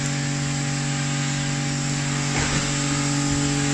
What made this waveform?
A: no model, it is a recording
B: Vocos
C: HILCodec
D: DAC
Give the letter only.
A